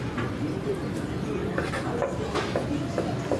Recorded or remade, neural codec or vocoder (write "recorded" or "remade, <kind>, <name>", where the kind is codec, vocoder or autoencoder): recorded